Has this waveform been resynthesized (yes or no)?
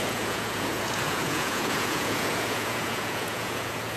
yes